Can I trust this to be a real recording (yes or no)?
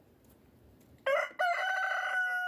yes